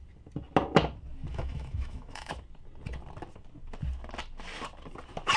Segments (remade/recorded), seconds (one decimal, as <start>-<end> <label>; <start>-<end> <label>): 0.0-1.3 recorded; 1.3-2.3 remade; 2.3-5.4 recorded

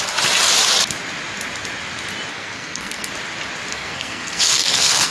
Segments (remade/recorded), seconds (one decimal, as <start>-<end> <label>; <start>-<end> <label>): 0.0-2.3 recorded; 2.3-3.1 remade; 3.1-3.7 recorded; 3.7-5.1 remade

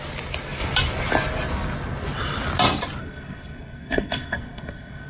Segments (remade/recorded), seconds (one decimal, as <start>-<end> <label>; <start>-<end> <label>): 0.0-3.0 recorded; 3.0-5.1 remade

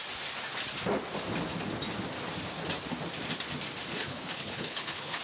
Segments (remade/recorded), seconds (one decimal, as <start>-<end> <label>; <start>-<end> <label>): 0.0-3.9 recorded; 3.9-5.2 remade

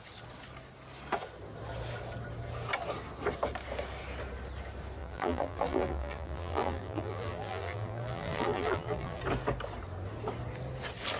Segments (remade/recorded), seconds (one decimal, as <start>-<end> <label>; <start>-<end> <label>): 0.0-5.0 recorded; 5.0-9.2 remade; 9.2-11.2 recorded

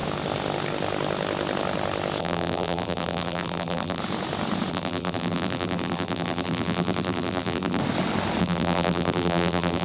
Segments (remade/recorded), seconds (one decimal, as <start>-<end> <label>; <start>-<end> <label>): 0.0-2.2 recorded; 2.2-4.0 remade; 4.0-4.7 recorded; 4.7-7.8 remade; 7.8-8.4 recorded; 8.4-9.8 remade